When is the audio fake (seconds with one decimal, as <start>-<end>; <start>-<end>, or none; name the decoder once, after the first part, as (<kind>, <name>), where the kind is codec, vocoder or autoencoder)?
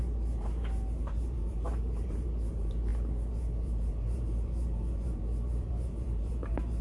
0.0-6.8 (vocoder, BigVGAN v2)